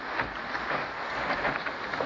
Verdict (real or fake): real